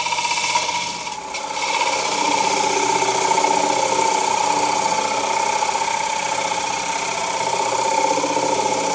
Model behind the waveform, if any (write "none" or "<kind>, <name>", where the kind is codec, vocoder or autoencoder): none